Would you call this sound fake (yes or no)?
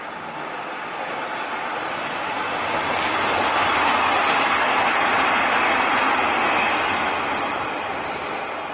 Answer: no